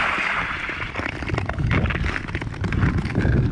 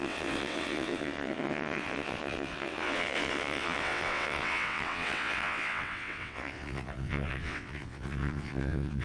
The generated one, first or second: second